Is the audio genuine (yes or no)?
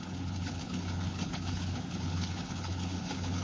no